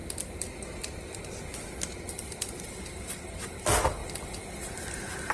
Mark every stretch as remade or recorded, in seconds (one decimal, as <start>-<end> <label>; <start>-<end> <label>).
0.0-2.1 recorded; 2.1-5.3 remade

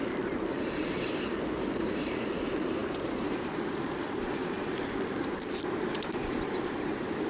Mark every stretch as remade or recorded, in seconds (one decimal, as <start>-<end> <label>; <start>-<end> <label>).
0.0-7.3 remade

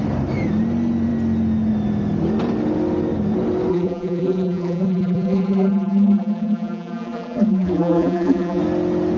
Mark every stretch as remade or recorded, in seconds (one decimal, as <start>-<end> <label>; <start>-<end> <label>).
0.0-3.7 recorded; 3.7-8.6 remade; 8.6-9.2 recorded

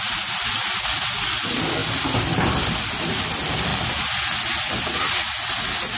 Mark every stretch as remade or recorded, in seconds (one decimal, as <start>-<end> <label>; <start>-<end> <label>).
0.0-1.8 recorded; 1.8-2.9 remade; 2.9-6.0 recorded

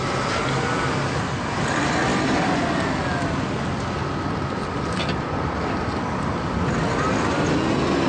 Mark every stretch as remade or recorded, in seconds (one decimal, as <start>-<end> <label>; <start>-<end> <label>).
0.0-8.1 recorded

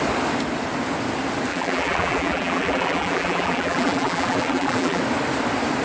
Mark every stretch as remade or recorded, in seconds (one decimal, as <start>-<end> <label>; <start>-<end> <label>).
0.0-1.5 recorded; 1.5-5.0 remade; 5.0-5.8 recorded